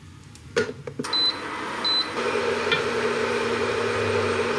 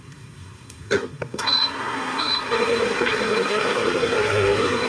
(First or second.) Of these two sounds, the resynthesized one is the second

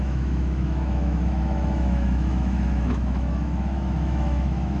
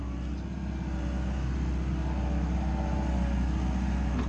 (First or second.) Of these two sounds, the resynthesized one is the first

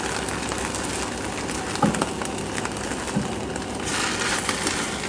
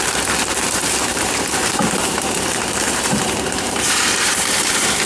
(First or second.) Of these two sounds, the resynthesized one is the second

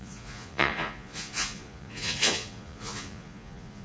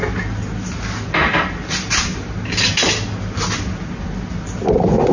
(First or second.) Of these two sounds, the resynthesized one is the first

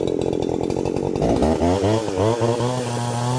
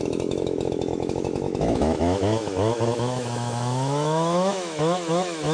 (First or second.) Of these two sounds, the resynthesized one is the second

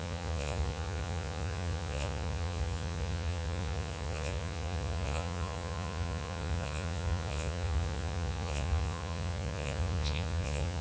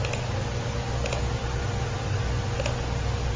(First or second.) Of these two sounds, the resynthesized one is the first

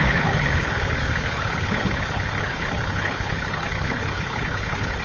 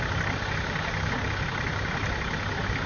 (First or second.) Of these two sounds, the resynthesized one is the first